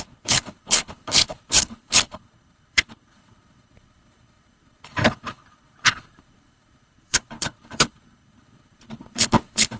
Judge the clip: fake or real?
fake